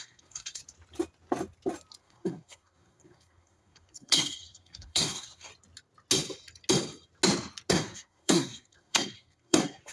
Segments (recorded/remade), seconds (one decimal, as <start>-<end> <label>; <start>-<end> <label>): 0.0-0.6 remade; 0.6-2.0 recorded; 2.0-5.5 remade; 5.5-7.7 recorded; 7.7-9.9 remade